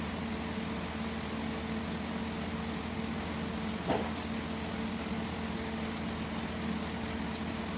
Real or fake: real